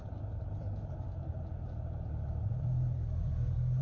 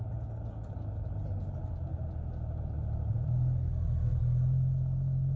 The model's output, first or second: first